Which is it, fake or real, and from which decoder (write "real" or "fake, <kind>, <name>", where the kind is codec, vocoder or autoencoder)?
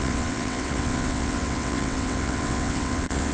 fake, vocoder, WaveNeXt